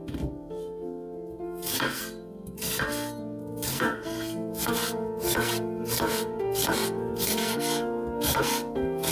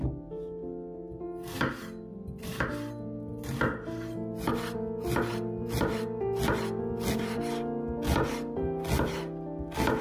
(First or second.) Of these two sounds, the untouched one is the second